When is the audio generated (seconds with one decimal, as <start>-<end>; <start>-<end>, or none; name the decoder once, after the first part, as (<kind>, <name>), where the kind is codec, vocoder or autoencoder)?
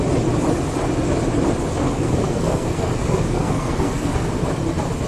1.8-4.3 (codec, SNAC)